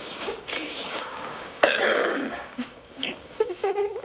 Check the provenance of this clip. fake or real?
fake